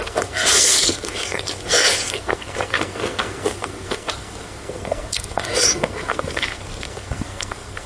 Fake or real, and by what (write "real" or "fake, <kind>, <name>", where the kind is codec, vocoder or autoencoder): fake, codec, SNAC